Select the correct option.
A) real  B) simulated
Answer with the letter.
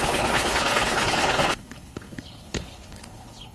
B